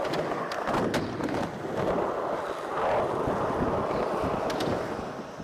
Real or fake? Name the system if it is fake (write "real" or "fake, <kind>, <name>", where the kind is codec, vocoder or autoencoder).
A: real